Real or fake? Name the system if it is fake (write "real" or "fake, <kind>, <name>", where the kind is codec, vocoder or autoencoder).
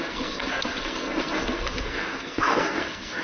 fake, codec, SNAC